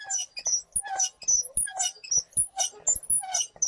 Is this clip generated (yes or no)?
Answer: no